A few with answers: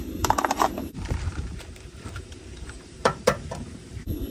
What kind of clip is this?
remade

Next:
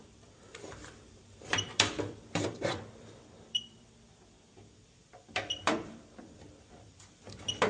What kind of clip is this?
remade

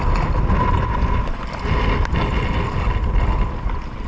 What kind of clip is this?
recorded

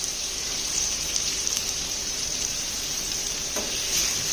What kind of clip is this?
remade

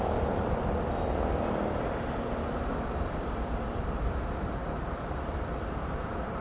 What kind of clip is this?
remade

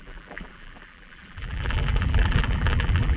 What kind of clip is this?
remade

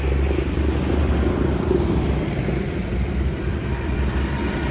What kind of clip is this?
remade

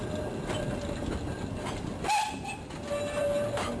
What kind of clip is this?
recorded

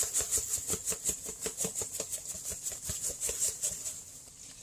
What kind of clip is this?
recorded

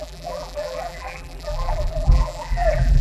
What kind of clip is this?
remade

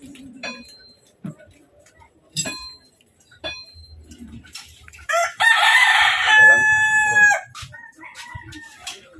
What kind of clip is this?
remade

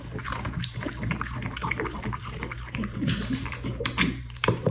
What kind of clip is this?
remade